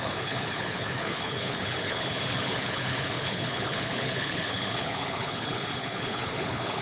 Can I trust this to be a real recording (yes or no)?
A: no